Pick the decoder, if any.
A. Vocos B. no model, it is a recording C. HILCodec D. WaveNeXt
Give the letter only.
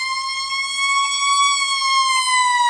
B